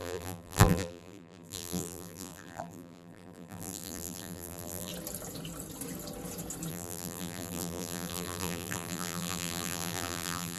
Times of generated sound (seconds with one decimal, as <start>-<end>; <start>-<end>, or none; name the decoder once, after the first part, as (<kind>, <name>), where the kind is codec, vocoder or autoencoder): 0.0-4.9 (vocoder, BigVGAN v2); 6.7-10.6